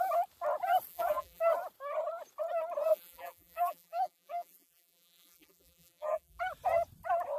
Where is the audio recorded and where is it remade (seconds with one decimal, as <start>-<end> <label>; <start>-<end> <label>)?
0.0-0.9 recorded; 0.9-1.4 remade; 1.4-2.9 recorded; 2.9-6.4 remade; 6.4-7.4 recorded